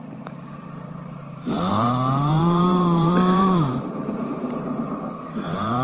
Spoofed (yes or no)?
yes